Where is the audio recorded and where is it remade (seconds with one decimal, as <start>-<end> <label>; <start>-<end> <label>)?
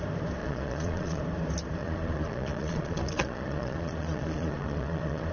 0.0-0.4 recorded; 0.4-1.2 remade; 1.2-1.8 recorded; 1.8-5.3 remade